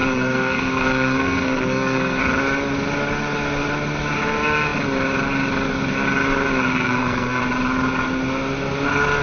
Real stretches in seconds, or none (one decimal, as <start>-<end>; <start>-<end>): 2.2-6.7; 7.4-9.2